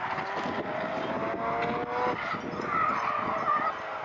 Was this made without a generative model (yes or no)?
yes